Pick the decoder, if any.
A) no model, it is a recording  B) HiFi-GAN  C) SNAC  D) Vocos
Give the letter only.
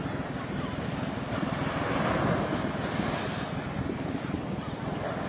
A